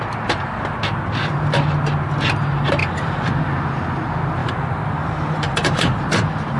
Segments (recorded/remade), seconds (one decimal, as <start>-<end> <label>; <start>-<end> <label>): 0.0-4.4 recorded; 4.4-6.0 remade; 6.0-6.6 recorded